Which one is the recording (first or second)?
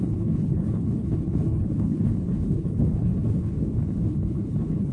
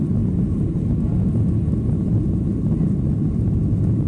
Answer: second